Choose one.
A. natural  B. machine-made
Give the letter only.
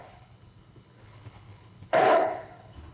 B